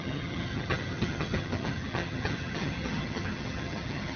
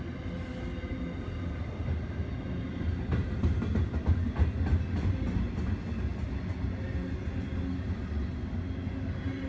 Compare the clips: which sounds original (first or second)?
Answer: second